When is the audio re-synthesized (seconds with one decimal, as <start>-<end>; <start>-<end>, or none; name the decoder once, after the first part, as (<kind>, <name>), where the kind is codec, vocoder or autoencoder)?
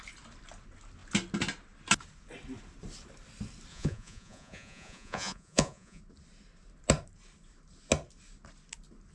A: 3.7-6.0 (vocoder, Vocos)